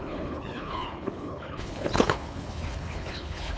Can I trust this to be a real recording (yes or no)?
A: no